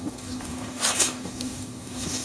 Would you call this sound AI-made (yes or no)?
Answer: yes